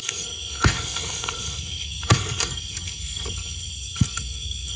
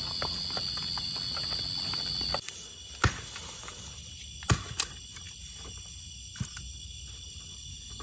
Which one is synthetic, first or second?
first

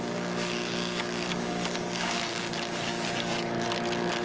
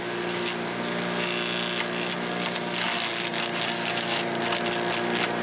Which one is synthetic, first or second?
first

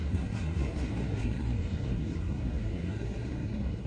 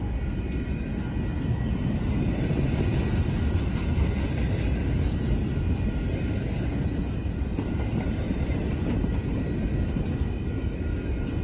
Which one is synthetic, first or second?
first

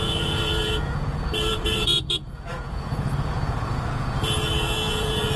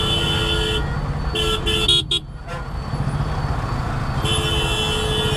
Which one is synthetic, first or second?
first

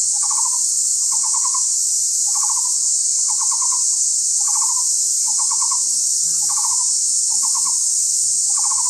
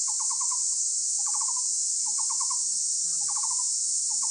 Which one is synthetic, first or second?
first